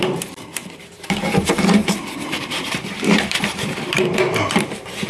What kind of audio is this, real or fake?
fake